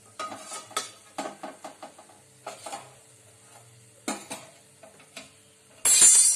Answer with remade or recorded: recorded